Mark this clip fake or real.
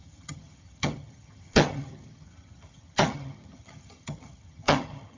fake